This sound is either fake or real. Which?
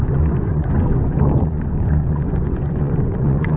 fake